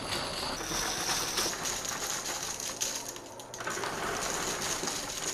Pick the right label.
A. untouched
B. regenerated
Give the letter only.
A